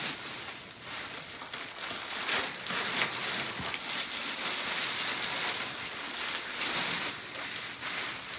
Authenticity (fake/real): real